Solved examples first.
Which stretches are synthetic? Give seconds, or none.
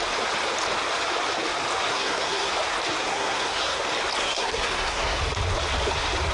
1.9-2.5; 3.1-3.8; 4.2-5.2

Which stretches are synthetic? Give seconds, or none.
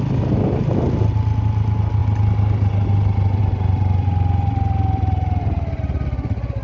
none